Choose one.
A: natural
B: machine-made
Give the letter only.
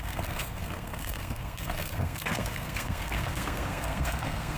B